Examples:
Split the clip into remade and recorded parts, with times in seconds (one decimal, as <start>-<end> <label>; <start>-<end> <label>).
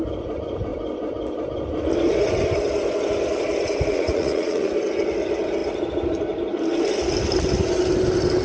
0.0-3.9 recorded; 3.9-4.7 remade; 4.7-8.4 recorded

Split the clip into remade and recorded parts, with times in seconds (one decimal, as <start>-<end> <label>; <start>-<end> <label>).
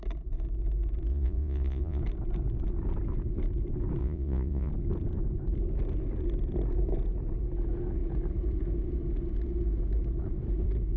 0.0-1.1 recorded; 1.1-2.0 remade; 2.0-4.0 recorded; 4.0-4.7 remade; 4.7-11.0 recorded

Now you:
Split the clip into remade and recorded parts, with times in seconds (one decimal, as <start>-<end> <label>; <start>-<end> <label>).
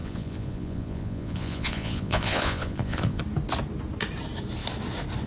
0.0-3.2 remade; 3.2-5.3 recorded